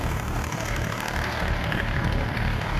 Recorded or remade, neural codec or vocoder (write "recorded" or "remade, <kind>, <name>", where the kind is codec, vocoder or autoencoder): remade, codec, DAC